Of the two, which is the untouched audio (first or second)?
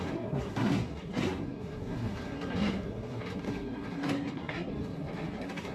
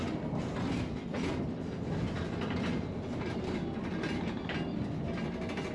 second